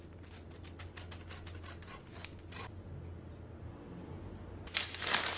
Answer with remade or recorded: recorded